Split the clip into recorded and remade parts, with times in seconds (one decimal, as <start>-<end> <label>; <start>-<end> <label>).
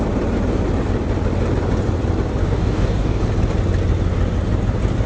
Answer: 0.0-2.4 recorded; 2.4-3.2 remade; 3.2-5.1 recorded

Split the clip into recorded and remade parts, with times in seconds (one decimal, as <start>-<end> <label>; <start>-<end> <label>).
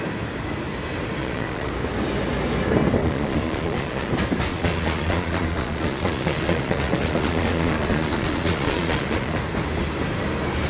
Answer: 0.0-1.2 recorded; 1.2-1.7 remade; 1.7-3.0 recorded; 3.0-4.1 remade; 4.1-4.5 recorded; 4.5-9.4 remade; 9.4-10.7 recorded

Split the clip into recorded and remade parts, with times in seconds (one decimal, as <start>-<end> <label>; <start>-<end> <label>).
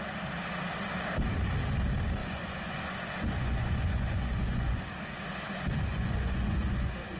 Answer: 0.0-2.2 recorded; 2.2-4.8 remade; 4.8-5.9 recorded; 5.9-7.2 remade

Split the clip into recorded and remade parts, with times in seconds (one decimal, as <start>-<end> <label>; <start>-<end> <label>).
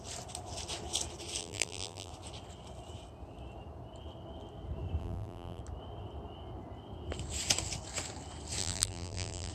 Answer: 0.0-1.4 recorded; 1.4-2.1 remade; 2.1-5.0 recorded; 5.0-5.6 remade; 5.6-8.6 recorded; 8.6-9.5 remade